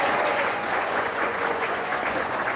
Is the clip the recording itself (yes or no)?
no